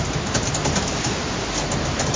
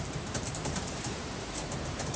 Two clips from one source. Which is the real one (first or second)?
first